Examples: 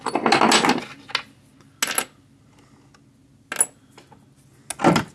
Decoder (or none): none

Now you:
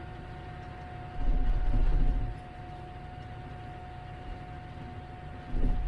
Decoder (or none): none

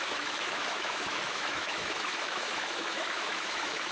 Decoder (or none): autoencoder, DAC-VAE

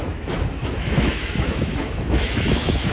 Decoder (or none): autoencoder, DAC-VAE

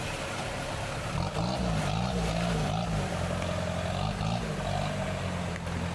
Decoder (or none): none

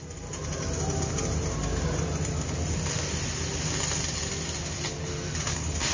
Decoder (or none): none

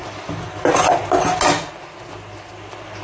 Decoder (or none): none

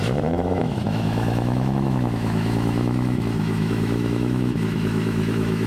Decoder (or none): autoencoder, DAC-VAE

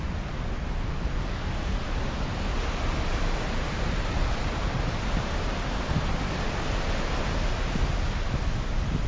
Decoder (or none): none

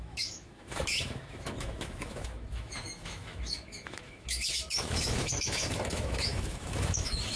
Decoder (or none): autoencoder, DAC-VAE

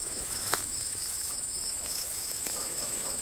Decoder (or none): autoencoder, DAC-VAE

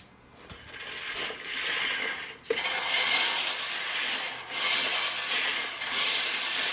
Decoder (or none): none